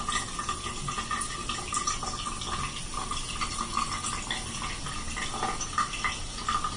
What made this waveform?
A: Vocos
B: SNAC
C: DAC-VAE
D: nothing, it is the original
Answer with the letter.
D